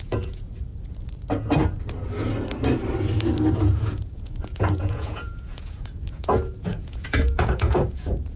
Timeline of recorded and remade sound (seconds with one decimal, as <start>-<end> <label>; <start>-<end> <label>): 0.0-0.7 remade; 0.7-3.5 recorded; 3.5-8.4 remade